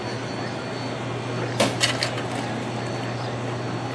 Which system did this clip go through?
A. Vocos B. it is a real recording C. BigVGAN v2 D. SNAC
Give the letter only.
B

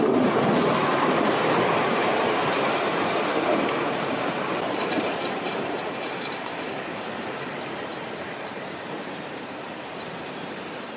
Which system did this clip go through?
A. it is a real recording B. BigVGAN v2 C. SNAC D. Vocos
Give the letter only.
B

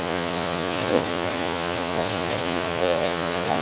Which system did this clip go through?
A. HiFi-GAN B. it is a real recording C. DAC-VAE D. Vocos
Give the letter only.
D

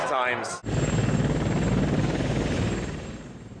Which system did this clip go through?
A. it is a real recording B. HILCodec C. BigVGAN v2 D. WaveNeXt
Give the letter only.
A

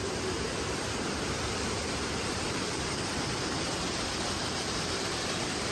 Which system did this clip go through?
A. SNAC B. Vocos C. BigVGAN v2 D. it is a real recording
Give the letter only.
C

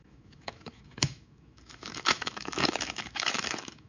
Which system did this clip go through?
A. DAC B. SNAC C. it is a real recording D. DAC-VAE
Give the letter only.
D